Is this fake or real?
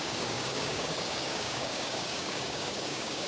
fake